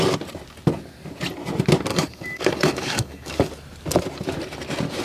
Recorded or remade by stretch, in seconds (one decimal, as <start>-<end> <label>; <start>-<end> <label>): 0.0-1.9 recorded; 1.9-3.5 remade; 3.5-5.0 recorded